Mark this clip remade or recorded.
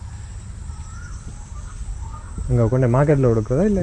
remade